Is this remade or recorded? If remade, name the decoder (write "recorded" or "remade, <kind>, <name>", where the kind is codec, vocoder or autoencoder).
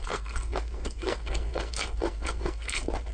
remade, codec, SNAC